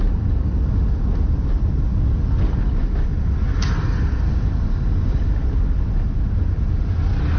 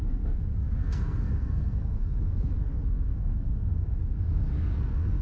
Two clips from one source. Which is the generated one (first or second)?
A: second